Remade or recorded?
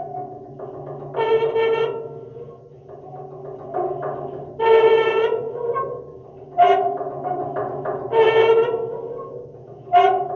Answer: recorded